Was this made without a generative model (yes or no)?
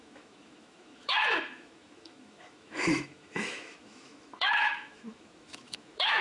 no